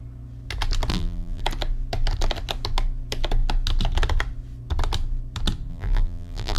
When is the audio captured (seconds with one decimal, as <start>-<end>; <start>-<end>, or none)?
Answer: 0.0-0.9; 1.4-5.7